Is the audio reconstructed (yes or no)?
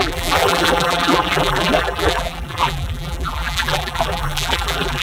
yes